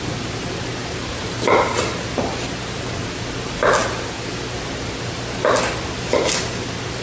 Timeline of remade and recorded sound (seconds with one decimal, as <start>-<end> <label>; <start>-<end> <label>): 0.0-7.0 recorded